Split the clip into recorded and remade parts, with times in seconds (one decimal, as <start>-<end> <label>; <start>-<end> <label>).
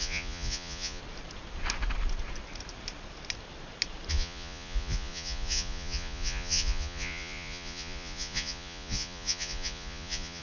0.0-1.0 remade; 1.0-4.1 recorded; 4.1-10.4 remade